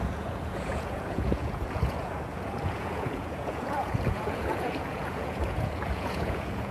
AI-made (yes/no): yes